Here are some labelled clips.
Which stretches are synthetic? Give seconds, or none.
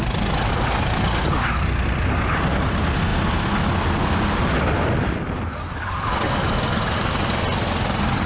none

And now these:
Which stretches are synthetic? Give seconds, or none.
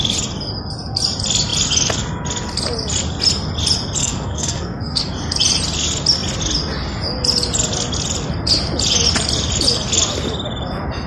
4.0-5.0 (codec, SNAC)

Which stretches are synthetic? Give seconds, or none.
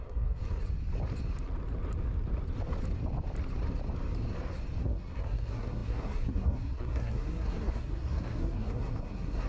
0.0-0.4 (codec, SNAC); 4.8-9.5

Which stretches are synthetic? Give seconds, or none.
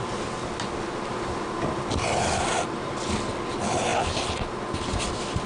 none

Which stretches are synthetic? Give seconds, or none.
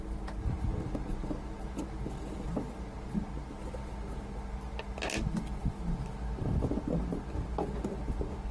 none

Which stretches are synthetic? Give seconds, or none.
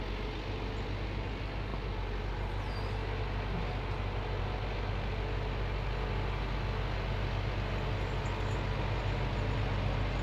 none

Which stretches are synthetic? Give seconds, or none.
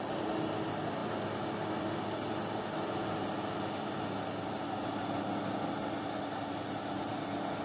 none